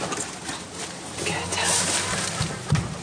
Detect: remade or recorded recorded